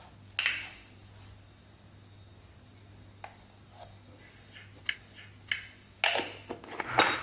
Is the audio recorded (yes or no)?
yes